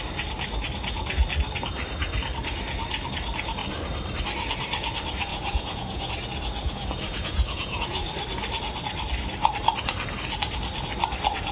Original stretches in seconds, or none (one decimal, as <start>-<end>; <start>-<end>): 0.0-5.3; 6.1-6.6; 8.1-11.5